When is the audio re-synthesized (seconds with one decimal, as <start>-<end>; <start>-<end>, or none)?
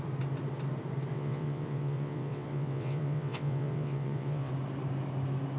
1.1-4.5